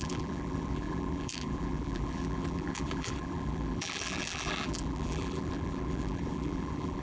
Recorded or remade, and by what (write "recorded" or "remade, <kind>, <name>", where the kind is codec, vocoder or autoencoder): remade, vocoder, BigVGAN v2